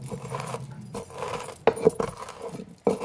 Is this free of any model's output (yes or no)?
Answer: yes